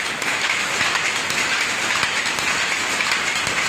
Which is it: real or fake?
real